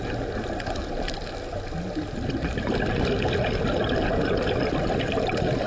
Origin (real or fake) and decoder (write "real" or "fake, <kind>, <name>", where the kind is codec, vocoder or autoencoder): real